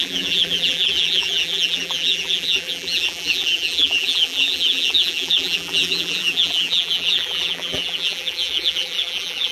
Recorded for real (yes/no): no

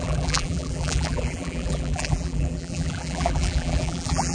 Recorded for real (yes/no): no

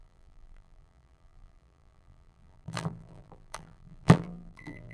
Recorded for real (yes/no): no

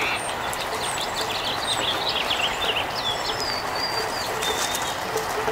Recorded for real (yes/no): yes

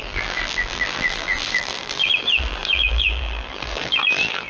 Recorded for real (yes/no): no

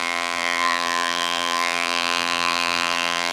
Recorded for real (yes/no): no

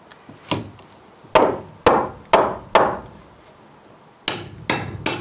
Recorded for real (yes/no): yes